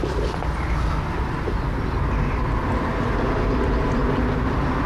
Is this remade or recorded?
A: recorded